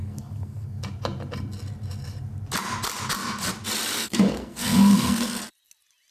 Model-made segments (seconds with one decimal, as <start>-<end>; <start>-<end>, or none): 0.0-0.8; 3.9-5.4